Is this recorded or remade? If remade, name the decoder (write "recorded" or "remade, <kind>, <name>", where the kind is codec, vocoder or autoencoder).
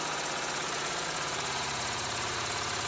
remade, vocoder, Vocos